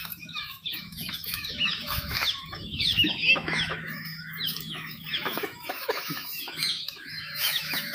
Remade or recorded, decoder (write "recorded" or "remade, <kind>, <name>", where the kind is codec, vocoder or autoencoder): remade, autoencoder, DAC-VAE